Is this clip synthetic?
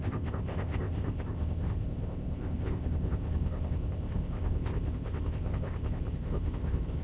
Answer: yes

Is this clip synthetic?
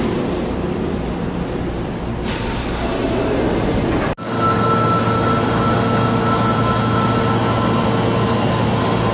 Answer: no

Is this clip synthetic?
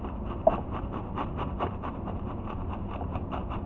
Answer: yes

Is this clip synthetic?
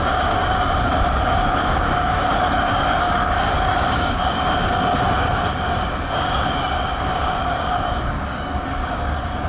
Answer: yes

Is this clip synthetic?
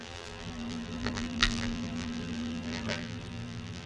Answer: yes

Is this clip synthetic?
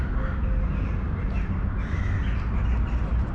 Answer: no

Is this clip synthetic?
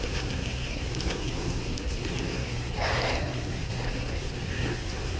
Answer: yes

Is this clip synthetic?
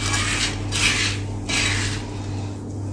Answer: no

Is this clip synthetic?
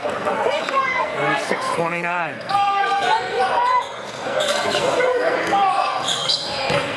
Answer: yes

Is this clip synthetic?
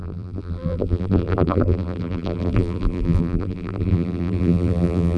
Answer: yes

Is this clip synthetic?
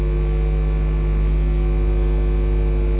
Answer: no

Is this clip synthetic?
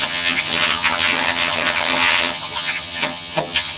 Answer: yes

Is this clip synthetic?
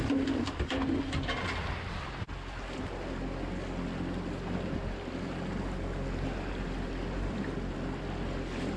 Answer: no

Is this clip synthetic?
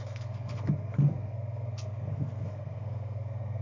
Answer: yes